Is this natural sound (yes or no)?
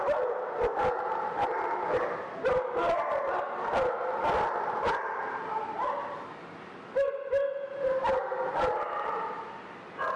yes